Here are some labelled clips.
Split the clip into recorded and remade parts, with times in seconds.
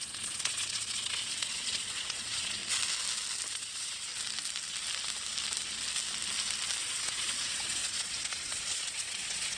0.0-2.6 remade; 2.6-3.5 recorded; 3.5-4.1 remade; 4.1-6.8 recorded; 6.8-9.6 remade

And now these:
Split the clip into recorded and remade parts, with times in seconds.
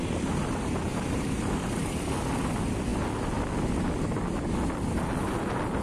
0.0-0.9 recorded; 0.9-1.4 remade; 1.4-5.8 recorded